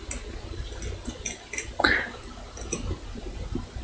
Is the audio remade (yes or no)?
no